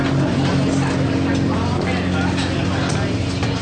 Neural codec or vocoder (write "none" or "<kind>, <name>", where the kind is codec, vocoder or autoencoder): none